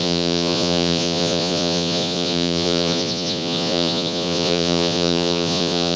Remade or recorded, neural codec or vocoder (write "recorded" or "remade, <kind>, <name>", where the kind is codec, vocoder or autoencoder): remade, vocoder, Vocos